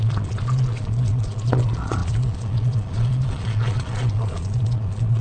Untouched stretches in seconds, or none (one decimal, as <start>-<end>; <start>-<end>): none

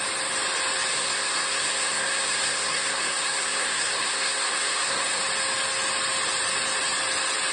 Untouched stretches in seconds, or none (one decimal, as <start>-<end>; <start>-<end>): 0.0-0.9; 5.2-7.5

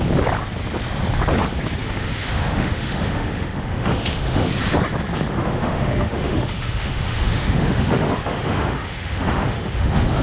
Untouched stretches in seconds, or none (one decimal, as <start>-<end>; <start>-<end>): 0.0-1.8; 4.5-5.3

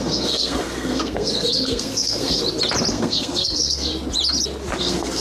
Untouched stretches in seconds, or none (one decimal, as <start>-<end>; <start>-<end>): 2.4-2.9; 3.9-4.8